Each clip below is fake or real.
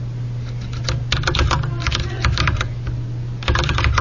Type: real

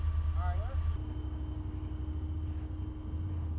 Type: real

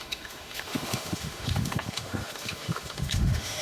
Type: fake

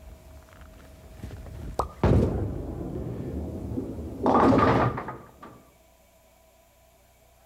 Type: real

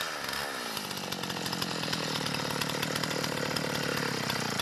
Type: real